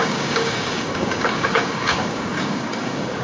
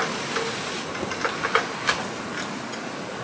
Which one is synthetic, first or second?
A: first